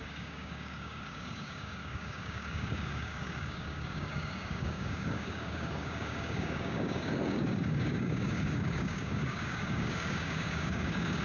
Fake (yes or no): yes